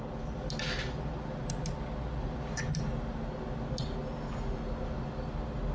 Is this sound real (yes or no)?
yes